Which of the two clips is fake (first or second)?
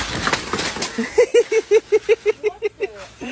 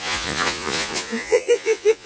second